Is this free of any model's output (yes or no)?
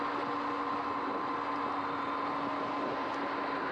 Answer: yes